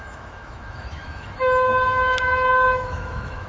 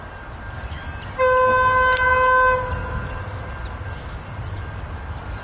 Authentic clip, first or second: second